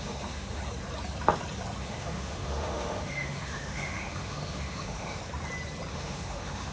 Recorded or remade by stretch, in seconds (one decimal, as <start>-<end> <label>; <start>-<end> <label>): 0.0-0.6 remade; 0.6-1.8 recorded; 1.8-5.2 remade; 5.2-5.9 recorded; 5.9-6.7 remade